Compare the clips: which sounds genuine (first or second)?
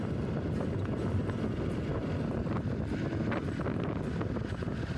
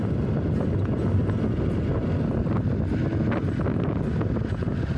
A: second